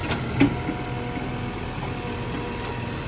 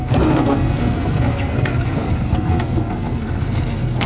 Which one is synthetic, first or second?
second